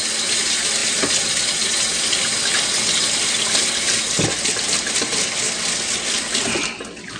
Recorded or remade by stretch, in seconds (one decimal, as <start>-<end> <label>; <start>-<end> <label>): 0.0-7.2 recorded